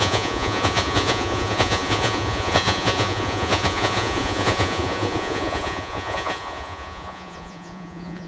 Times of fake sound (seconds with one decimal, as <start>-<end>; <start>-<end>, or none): 0.0-8.3